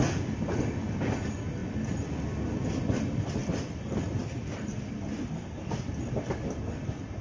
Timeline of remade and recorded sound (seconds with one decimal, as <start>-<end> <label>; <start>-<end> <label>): 0.0-3.4 recorded; 3.4-5.9 remade; 5.9-7.2 recorded